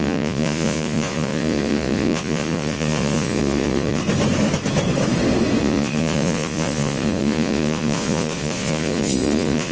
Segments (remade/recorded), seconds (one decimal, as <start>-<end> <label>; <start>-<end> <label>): 0.0-4.0 remade; 4.0-5.6 recorded; 5.6-9.7 remade